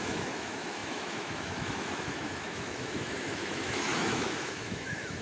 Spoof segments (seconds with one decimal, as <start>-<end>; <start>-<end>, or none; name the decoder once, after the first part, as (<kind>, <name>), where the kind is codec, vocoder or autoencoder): 0.0-5.2 (autoencoder, DAC-VAE)